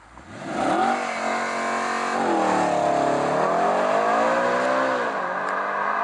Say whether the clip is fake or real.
real